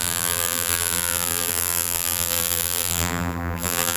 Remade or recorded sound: remade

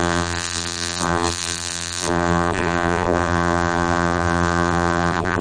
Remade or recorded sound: remade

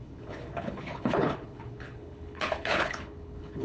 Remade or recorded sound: remade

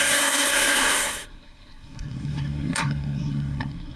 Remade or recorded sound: remade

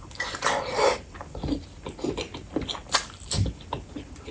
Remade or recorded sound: recorded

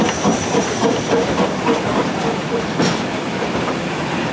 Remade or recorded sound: remade